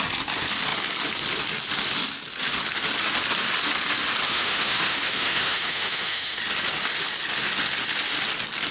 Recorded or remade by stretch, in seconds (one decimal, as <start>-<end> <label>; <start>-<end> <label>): 0.0-4.3 recorded; 4.3-6.4 remade; 6.4-8.7 recorded